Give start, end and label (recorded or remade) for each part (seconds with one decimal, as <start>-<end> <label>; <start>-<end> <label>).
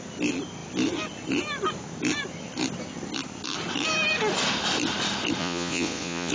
0.0-5.4 recorded; 5.4-6.3 remade